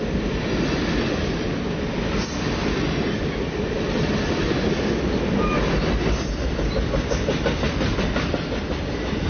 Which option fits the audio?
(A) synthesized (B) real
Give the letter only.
B